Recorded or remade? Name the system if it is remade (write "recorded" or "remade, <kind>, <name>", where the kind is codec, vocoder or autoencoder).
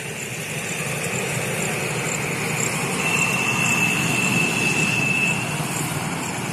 recorded